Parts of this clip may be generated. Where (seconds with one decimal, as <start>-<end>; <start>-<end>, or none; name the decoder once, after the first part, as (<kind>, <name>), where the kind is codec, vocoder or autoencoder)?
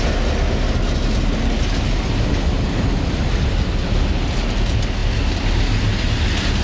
none